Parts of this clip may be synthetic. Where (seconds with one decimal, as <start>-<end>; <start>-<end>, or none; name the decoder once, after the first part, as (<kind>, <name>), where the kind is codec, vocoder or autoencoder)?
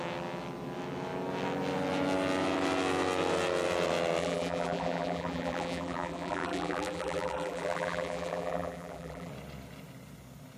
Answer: 4.2-9.3 (vocoder, BigVGAN v2)